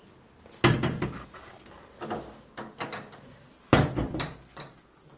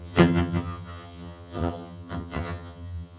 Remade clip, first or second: second